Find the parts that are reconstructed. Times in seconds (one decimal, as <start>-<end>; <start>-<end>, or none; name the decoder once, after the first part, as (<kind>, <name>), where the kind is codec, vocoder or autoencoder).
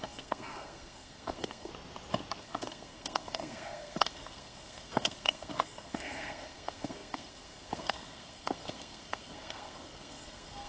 0.0-1.7 (codec, SNAC); 2.4-10.7